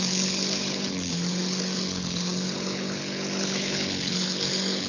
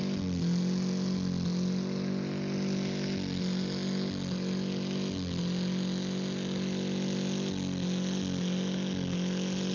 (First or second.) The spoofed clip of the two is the first